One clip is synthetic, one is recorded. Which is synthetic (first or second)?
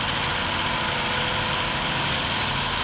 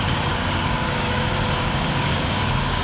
second